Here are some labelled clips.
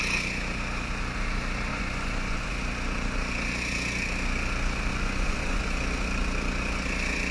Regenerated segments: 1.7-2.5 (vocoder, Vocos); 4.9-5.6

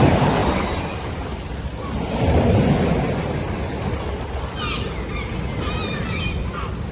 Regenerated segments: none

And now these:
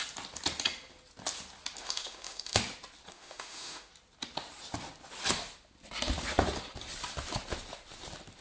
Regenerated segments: 1.8-2.6 (autoencoder, DAC-VAE); 3.1-3.9

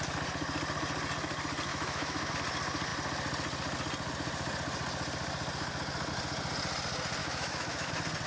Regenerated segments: 1.7-2.3 (autoencoder, DAC-VAE); 7.2-7.9

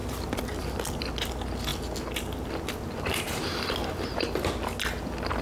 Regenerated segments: 0.0-1.0 (vocoder, BigVGAN v2)

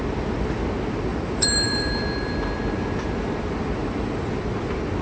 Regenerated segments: 1.1-2.3 (vocoder, BigVGAN v2); 3.8-4.3

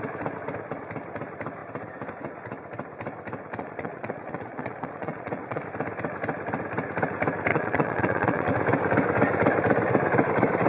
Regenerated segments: 3.6-5.6 (vocoder, Vocos); 7.5-8.5

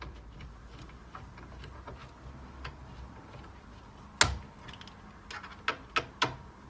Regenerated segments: none